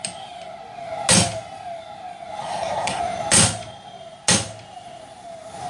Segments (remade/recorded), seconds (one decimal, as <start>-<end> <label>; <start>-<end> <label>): 0.0-2.4 recorded; 2.4-3.0 remade; 3.0-5.7 recorded